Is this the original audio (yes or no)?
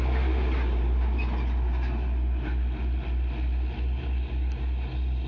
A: yes